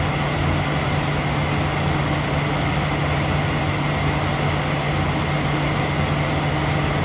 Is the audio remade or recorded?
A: recorded